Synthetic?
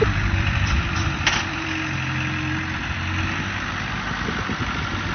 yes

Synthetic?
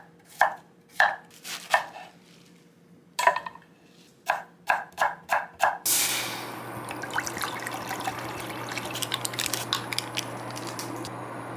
no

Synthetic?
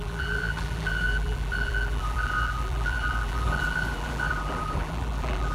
yes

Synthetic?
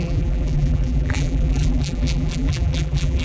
yes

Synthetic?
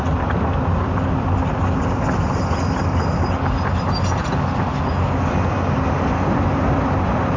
no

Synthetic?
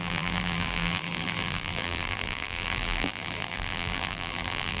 yes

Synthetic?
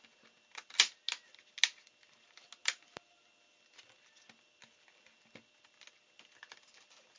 no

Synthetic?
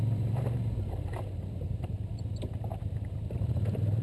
yes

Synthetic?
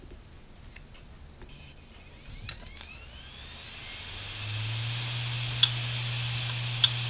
no